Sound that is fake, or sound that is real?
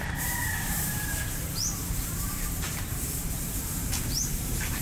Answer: fake